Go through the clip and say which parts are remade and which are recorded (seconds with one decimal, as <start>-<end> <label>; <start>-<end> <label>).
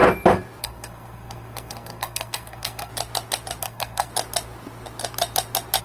0.0-0.6 recorded; 0.6-2.9 remade; 2.9-3.6 recorded; 3.6-4.1 remade; 4.1-5.8 recorded